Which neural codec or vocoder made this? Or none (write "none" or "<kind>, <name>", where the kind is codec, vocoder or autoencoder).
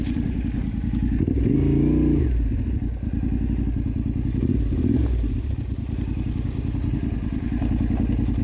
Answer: none